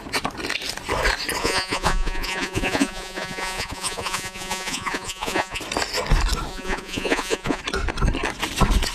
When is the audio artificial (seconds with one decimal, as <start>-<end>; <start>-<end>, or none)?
1.4-5.6; 6.5-7.6